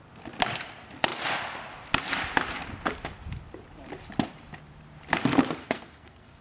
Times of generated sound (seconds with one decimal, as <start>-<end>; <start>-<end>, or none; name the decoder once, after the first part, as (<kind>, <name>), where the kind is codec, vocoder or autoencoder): 5.6-6.4 (codec, SNAC)